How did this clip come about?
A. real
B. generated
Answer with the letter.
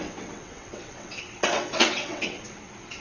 B